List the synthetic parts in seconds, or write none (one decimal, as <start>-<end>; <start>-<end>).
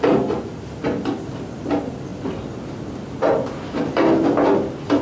none